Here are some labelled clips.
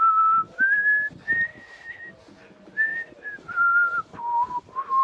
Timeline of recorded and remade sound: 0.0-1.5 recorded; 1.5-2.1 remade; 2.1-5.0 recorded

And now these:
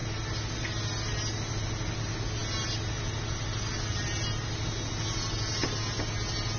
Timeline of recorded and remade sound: 0.0-6.6 recorded

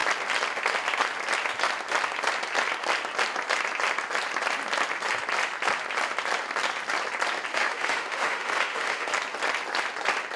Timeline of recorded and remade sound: 0.0-7.5 recorded; 7.5-9.1 remade; 9.1-10.4 recorded

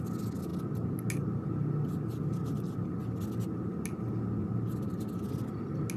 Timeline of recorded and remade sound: 0.0-6.0 recorded

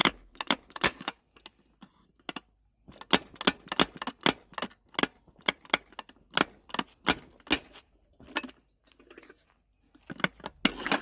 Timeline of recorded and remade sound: 0.0-1.2 remade; 1.2-11.0 recorded

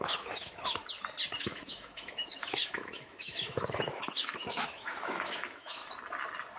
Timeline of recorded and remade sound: 0.0-0.8 remade; 0.8-1.4 recorded; 1.4-5.8 remade; 5.8-6.6 recorded

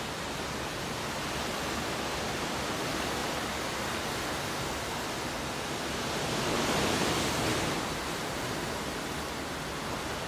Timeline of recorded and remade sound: 0.0-10.3 recorded

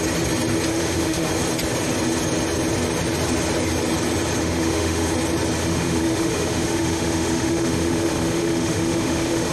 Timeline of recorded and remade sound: 0.0-0.7 recorded; 0.7-1.3 remade; 1.3-4.4 recorded; 4.4-5.1 remade; 5.1-5.6 recorded; 5.6-9.5 remade